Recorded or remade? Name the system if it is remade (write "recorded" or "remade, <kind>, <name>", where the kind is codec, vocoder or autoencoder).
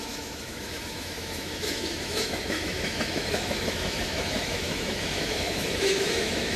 remade, autoencoder, DAC-VAE